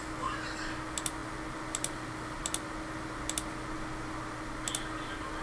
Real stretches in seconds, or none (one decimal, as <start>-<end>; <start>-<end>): 0.0-5.4